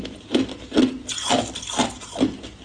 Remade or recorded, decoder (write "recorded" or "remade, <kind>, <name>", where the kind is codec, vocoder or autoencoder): recorded